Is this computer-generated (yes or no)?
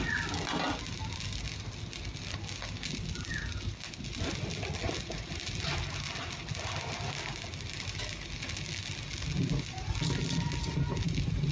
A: no